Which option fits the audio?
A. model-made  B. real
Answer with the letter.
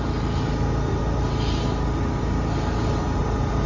B